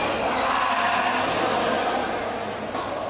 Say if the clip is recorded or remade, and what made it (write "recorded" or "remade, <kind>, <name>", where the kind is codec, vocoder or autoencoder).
recorded